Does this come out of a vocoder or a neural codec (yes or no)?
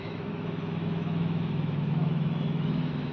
yes